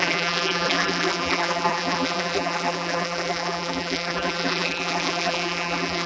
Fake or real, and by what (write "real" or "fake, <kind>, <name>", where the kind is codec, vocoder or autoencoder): fake, vocoder, BigVGAN v2